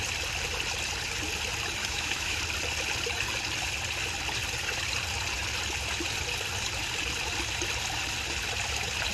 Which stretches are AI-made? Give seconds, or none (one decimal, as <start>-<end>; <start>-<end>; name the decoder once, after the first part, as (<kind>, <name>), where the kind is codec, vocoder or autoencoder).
1.8-2.4 (autoencoder, DAC-VAE)